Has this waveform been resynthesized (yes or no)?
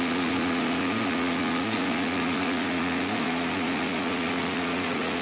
yes